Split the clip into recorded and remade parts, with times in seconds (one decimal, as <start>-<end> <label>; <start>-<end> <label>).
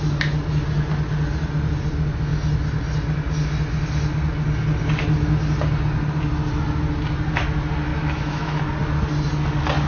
0.0-7.9 recorded; 7.9-8.6 remade; 8.6-9.9 recorded